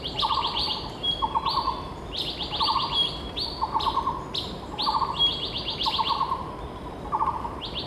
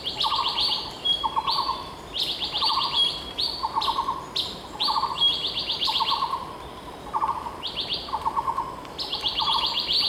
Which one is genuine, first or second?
first